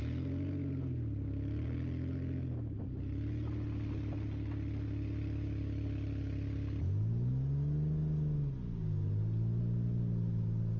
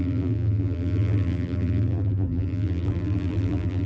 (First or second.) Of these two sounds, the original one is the first